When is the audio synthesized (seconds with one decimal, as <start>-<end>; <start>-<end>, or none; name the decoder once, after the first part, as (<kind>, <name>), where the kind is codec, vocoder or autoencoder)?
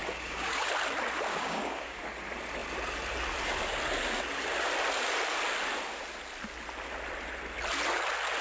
0.0-0.7 (codec, DAC); 1.3-2.0